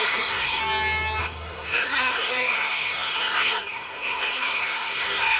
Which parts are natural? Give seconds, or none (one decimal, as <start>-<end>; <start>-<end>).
0.6-1.2